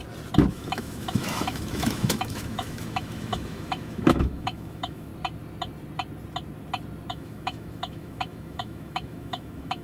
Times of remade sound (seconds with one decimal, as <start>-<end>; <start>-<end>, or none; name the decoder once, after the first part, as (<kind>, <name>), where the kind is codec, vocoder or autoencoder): 0.5-5.1 (autoencoder, DAC-VAE); 7.1-9.8